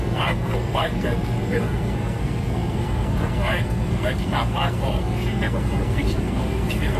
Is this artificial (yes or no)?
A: yes